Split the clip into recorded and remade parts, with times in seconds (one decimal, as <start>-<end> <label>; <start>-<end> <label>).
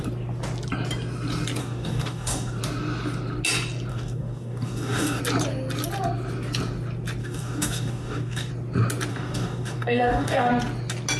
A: 0.0-1.6 recorded; 1.6-2.6 remade; 2.6-3.9 recorded; 3.9-5.2 remade; 5.2-7.2 recorded; 7.2-8.5 remade; 8.5-9.1 recorded; 9.1-10.5 remade; 10.5-11.2 recorded